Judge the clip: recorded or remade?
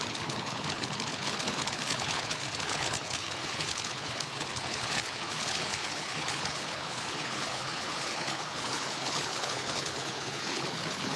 remade